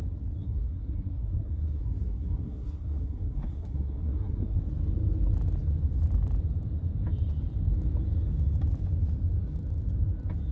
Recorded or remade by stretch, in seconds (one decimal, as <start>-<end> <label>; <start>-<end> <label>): 0.0-0.4 recorded; 0.4-4.6 remade; 4.6-10.5 recorded